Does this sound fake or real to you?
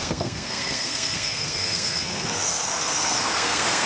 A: fake